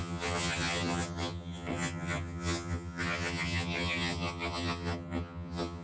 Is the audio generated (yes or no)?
yes